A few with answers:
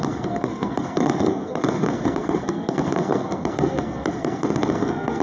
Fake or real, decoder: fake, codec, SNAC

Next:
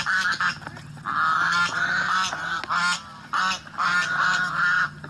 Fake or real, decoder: real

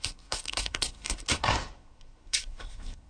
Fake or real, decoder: fake, codec, SNAC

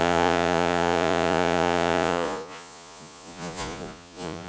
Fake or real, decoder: fake, vocoder, Vocos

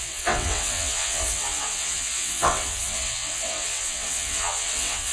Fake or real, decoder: fake, vocoder, WaveNeXt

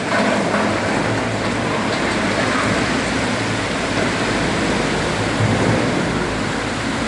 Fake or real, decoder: fake, vocoder, BigVGAN v2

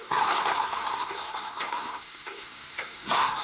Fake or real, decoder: fake, codec, SNAC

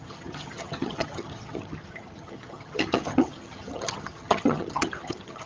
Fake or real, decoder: fake, vocoder, HiFi-GAN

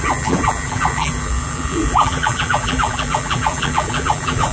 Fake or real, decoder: fake, vocoder, BigVGAN v2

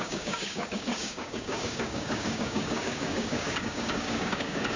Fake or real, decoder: fake, codec, DAC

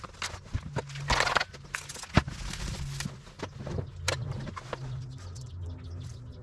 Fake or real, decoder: real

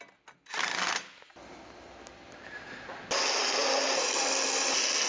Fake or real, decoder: real